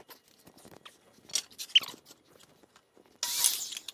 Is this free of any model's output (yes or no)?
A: yes